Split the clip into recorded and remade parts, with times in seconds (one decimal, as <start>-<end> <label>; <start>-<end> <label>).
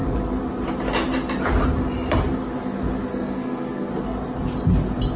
0.0-3.1 recorded; 3.1-3.9 remade; 3.9-5.2 recorded